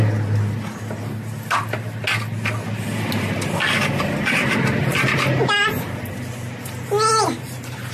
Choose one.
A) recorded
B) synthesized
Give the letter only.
A